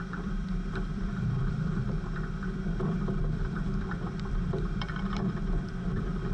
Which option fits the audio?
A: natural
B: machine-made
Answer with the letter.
B